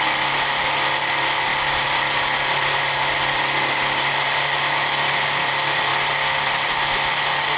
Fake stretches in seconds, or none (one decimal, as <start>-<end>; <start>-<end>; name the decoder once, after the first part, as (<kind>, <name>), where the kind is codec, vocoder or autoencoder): none